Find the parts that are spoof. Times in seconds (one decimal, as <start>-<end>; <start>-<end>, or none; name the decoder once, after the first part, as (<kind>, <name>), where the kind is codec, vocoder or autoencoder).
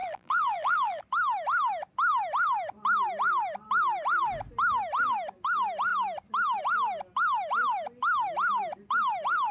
0.0-1.0 (vocoder, BigVGAN v2)